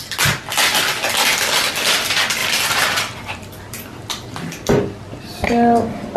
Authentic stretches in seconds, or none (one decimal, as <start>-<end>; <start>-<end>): 0.0-6.2